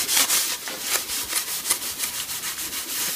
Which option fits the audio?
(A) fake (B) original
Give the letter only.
B